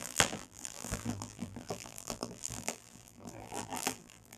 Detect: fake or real fake